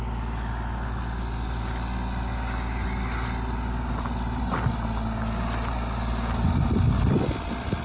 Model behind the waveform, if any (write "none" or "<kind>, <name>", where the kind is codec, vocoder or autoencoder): none